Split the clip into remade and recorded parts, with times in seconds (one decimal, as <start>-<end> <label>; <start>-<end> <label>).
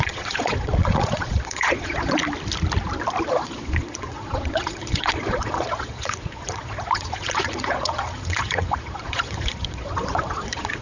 0.0-2.2 remade; 2.2-3.3 recorded; 3.3-10.8 remade